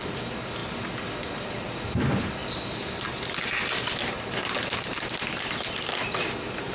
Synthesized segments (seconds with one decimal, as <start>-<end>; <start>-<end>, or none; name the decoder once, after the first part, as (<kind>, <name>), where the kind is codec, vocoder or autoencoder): none